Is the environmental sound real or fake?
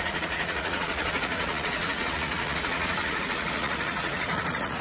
fake